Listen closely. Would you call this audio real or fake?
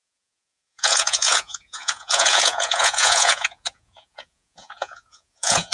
fake